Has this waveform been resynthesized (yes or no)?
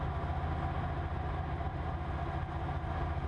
no